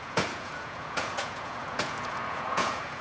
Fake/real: fake